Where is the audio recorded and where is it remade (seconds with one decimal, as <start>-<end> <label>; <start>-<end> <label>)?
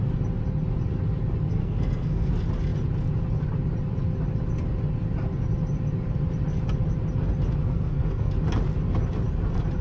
0.0-1.6 recorded; 1.6-2.3 remade; 2.3-7.6 recorded; 7.6-8.3 remade; 8.3-9.8 recorded